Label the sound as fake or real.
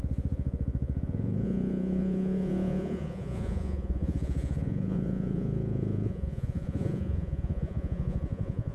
fake